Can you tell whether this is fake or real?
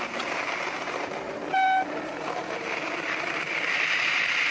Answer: fake